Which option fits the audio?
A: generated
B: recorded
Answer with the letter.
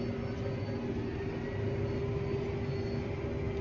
B